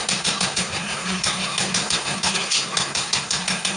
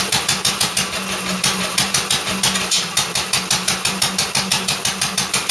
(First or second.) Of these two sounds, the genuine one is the second